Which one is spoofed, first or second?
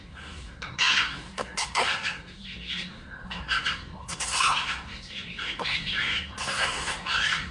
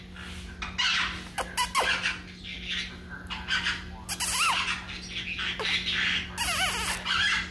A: first